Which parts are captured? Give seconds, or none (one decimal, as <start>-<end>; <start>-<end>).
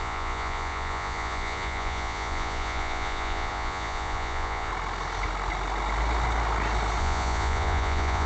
4.7-7.0